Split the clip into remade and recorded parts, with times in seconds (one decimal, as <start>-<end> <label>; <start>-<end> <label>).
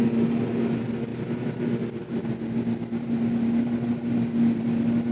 0.0-5.1 recorded